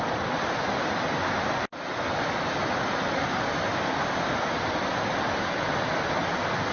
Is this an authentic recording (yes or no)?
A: yes